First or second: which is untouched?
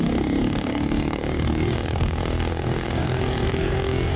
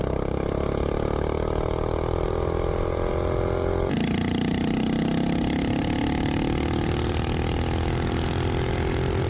second